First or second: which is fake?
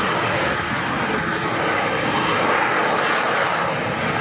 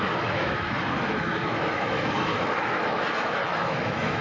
second